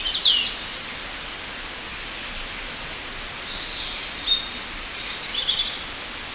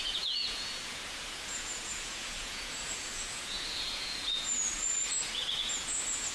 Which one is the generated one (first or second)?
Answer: second